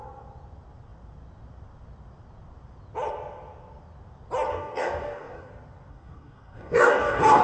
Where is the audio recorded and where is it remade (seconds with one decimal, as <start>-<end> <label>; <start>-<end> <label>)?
0.0-4.5 recorded; 4.5-5.5 remade; 5.5-5.9 recorded; 5.9-7.4 remade